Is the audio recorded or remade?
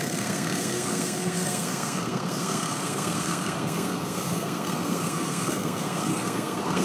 remade